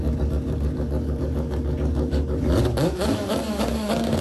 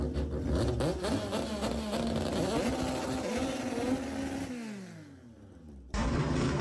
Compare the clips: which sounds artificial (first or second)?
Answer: first